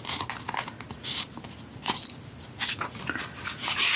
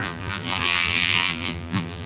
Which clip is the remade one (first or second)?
second